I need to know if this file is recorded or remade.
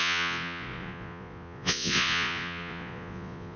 remade